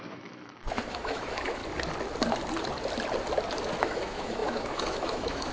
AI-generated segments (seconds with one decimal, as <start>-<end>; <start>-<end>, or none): 0.0-1.6; 3.8-5.5